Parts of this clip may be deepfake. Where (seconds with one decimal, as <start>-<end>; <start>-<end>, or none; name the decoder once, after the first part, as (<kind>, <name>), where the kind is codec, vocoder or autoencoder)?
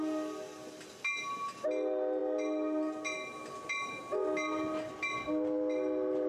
none